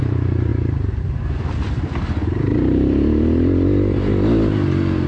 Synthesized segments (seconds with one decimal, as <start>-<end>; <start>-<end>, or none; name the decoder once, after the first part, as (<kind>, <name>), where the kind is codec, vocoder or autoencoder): 0.0-0.5 (vocoder, BigVGAN v2); 1.0-4.1